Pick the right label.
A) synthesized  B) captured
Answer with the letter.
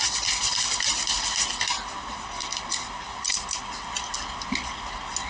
B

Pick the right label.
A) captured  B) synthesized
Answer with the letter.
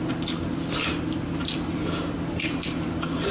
A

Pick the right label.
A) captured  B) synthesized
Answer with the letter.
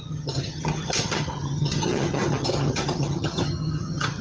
B